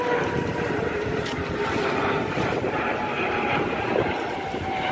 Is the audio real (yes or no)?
no